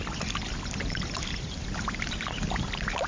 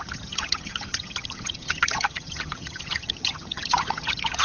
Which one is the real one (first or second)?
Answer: first